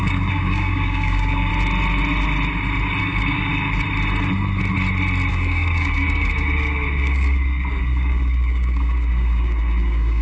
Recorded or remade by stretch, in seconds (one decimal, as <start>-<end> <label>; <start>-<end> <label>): 0.0-1.5 remade; 1.5-3.0 recorded; 3.0-3.5 remade; 3.5-5.3 recorded; 5.3-10.2 remade